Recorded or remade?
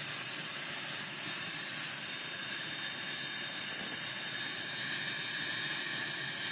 recorded